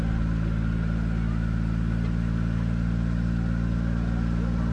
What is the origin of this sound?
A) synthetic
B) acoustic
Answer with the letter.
B